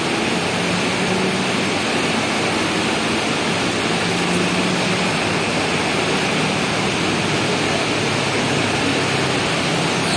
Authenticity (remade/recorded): recorded